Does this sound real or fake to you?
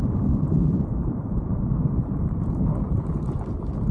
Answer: fake